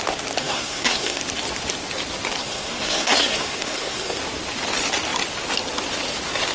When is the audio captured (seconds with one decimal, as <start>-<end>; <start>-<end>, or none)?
0.0-0.4; 1.2-2.4; 4.2-6.5